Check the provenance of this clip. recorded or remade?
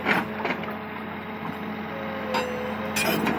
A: recorded